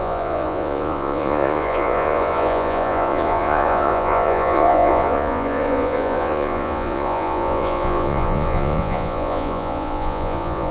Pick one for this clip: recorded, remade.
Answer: remade